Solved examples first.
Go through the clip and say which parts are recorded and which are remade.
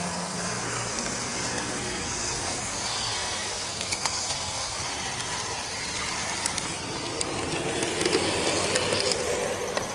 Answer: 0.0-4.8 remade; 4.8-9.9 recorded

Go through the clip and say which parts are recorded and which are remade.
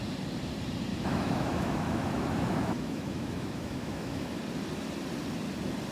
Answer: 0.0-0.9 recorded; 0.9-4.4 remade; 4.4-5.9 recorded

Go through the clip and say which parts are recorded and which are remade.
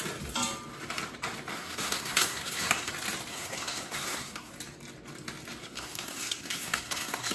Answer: 0.0-1.5 recorded; 1.5-2.9 remade; 2.9-3.3 recorded; 3.3-4.5 remade; 4.5-5.6 recorded; 5.6-7.3 remade